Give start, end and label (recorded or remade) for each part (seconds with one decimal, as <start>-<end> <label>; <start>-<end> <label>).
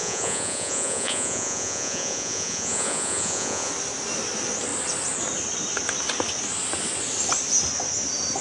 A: 0.0-3.7 remade; 3.7-8.4 recorded